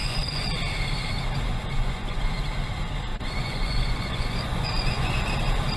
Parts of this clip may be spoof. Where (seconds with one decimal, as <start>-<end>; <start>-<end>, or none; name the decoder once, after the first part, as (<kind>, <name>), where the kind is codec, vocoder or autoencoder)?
0.0-0.6 (vocoder, Vocos); 1.5-2.2; 3.1-5.3